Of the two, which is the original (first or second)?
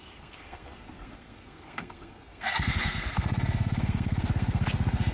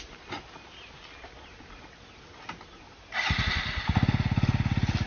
second